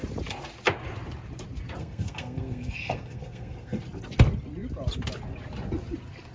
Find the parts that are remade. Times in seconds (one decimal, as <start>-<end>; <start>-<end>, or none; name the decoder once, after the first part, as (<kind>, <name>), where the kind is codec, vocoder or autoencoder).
1.8-3.8 (codec, SNAC)

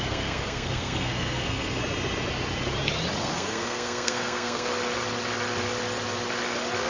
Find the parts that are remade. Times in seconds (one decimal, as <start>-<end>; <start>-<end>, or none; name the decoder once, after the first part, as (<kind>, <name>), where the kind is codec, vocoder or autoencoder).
0.0-1.8 (codec, SNAC); 3.2-4.7

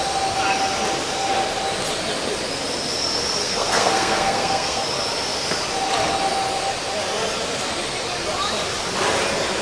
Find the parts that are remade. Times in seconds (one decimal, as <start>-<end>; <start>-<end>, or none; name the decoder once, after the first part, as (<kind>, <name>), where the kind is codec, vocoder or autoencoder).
3.4-4.8 (codec, SNAC)

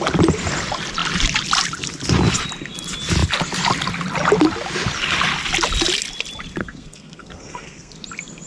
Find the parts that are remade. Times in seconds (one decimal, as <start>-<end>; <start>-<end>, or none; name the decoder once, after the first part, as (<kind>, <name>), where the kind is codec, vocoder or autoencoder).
6.6-7.9 (codec, SNAC)